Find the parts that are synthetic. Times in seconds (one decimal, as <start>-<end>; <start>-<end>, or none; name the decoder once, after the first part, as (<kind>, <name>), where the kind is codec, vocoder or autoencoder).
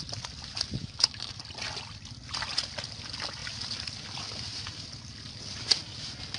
0.8-1.4 (autoencoder, DAC-VAE)